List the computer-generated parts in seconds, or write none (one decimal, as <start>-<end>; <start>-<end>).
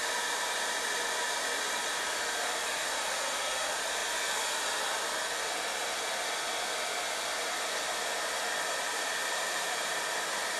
0.0-4.0; 8.8-10.6